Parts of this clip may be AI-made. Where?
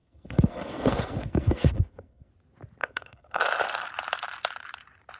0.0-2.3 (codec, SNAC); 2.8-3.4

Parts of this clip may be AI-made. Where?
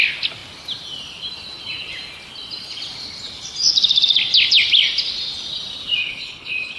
6.0-6.8 (codec, HILCodec)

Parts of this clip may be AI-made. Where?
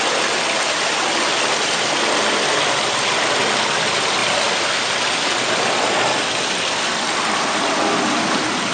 none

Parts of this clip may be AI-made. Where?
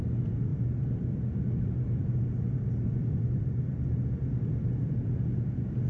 0.0-5.9 (vocoder, BigVGAN v2)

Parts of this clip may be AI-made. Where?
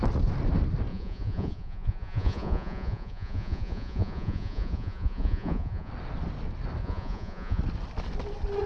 0.9-5.9 (vocoder, Vocos); 6.8-7.6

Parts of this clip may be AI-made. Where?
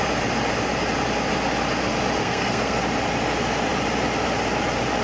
2.2-2.8 (codec, SNAC)